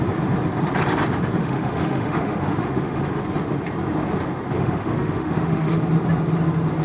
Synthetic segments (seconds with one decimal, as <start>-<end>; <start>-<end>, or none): 1.4-3.2; 4.6-5.8